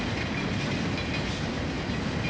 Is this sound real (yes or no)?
yes